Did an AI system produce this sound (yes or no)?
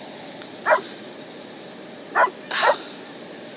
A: no